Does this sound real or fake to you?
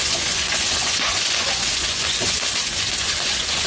fake